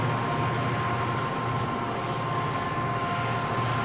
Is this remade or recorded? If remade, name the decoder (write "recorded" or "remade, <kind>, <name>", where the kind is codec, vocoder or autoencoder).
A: recorded